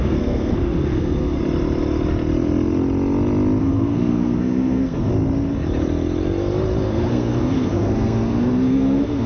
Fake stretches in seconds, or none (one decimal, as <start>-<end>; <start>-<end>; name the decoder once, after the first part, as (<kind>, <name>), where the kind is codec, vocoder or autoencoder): 0.0-1.4 (codec, SNAC); 3.6-5.1; 6.8-9.3